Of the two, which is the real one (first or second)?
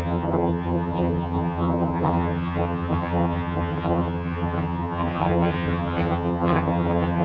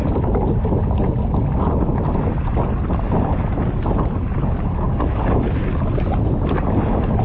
second